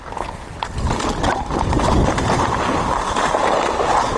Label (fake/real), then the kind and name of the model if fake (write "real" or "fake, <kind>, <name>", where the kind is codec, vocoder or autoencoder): real